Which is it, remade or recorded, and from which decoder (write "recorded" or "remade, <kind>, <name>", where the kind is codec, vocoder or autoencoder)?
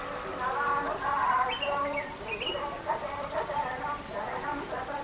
recorded